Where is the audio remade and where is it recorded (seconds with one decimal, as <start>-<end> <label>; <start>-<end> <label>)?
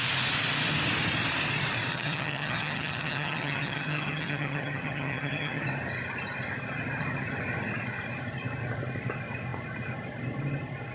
0.0-1.9 recorded; 1.9-5.6 remade; 5.6-10.9 recorded